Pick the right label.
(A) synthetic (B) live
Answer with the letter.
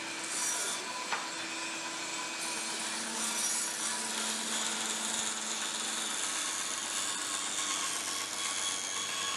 B